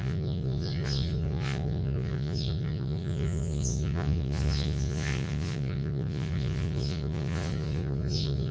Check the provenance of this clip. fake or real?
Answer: fake